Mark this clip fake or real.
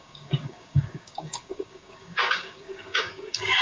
fake